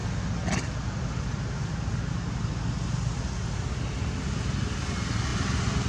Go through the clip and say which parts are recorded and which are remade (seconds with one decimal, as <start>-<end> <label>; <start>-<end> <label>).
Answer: 0.0-5.9 recorded